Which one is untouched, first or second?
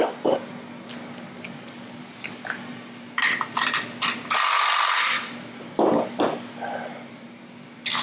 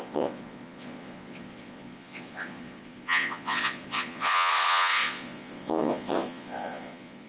first